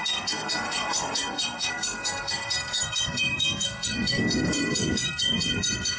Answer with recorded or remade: remade